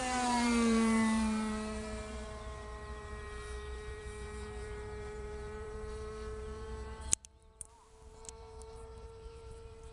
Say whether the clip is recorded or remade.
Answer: remade